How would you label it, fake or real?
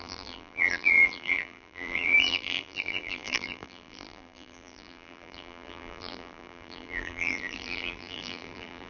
fake